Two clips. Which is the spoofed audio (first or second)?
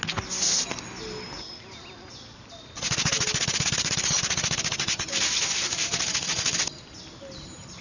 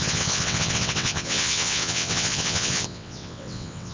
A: second